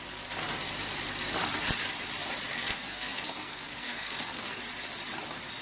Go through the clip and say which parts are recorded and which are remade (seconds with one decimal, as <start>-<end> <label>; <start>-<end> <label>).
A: 0.0-2.5 recorded; 2.5-4.6 remade; 4.6-5.6 recorded